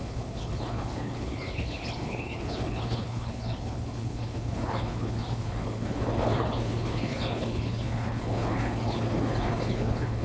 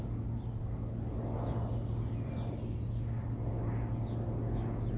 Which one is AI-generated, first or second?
first